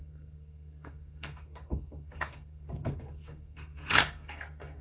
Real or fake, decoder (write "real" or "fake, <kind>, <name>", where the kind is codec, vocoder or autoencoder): fake, codec, SNAC